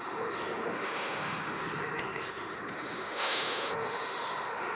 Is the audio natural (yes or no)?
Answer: no